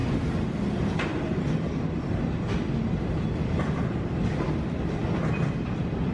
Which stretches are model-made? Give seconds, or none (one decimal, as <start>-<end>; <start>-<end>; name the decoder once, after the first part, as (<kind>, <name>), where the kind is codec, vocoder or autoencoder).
none